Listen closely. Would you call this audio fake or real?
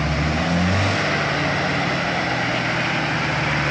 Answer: real